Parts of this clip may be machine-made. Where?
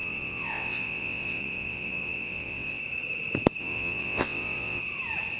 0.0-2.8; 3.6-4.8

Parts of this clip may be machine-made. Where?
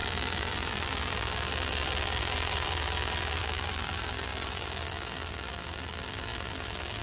0.0-7.0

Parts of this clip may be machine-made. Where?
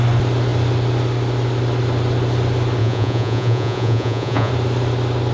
2.8-4.5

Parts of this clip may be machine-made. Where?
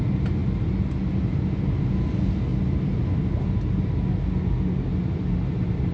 none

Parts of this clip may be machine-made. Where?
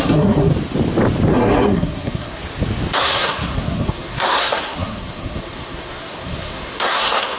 0.0-0.5; 1.3-2.4; 3.0-7.4